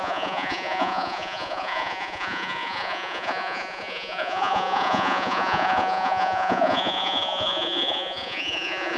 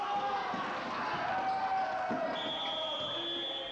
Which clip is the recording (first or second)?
second